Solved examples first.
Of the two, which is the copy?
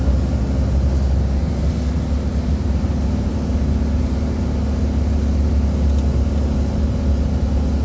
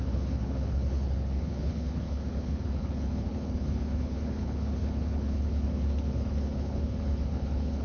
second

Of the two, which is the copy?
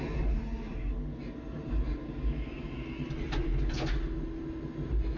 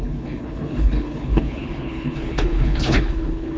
second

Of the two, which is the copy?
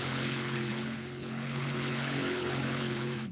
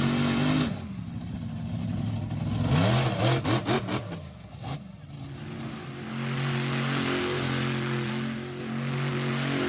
first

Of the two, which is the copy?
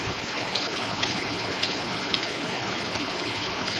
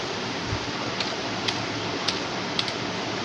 first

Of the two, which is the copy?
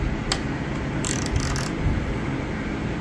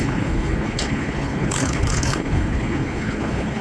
second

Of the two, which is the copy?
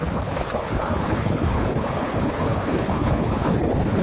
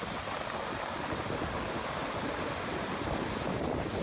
first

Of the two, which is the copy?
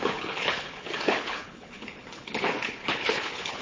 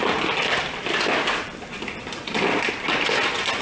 first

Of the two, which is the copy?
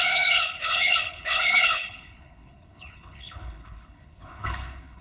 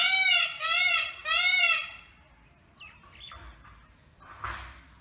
first